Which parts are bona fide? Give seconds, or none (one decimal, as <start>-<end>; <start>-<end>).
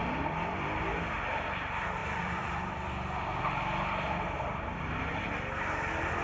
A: 0.0-2.0; 3.4-6.2